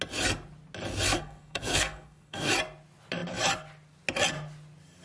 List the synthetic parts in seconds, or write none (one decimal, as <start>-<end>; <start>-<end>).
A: 1.1-2.5